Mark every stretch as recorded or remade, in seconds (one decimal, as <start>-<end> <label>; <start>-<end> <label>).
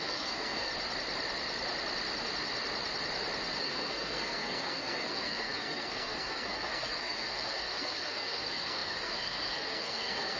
0.0-0.7 remade; 0.7-3.6 recorded; 3.6-10.4 remade